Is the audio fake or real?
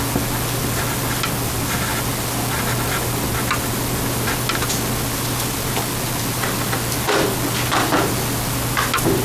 real